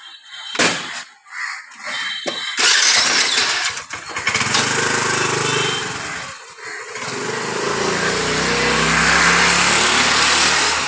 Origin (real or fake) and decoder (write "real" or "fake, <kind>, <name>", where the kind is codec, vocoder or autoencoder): real